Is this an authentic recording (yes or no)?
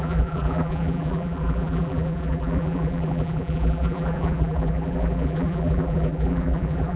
no